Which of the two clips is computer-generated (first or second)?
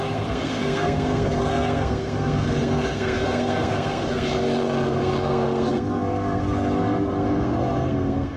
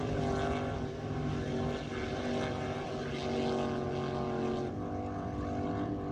first